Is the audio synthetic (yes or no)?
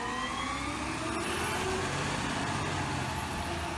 no